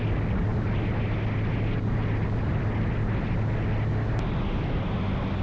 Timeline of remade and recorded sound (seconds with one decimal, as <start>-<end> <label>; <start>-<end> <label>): 0.0-5.4 recorded